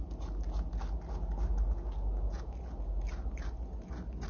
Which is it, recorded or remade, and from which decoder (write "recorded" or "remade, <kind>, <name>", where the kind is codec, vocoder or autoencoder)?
recorded